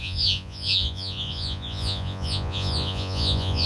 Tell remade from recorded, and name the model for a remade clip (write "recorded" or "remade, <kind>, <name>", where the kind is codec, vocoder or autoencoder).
remade, vocoder, Vocos